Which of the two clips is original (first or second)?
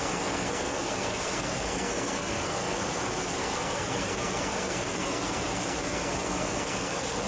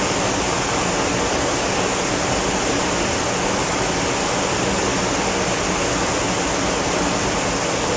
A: second